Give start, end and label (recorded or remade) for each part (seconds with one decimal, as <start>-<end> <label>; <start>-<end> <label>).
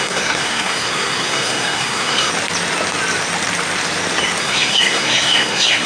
0.0-2.3 remade; 2.3-4.4 recorded; 4.4-5.9 remade